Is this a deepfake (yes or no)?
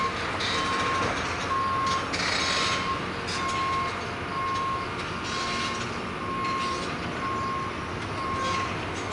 no